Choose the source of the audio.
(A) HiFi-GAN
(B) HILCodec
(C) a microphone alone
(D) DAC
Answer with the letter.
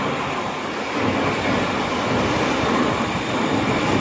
C